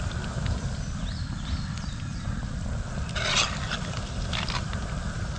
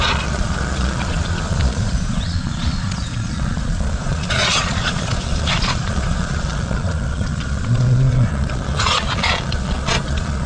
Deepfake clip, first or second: second